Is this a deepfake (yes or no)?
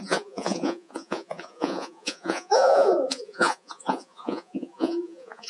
yes